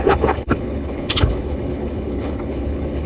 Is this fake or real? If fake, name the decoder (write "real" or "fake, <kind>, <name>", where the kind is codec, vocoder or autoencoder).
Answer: fake, codec, HILCodec